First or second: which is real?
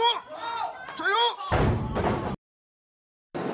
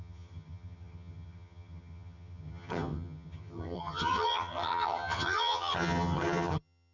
first